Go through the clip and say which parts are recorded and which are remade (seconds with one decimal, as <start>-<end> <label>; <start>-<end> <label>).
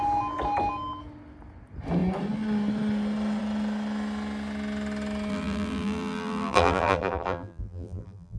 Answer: 0.0-5.3 recorded; 5.3-8.4 remade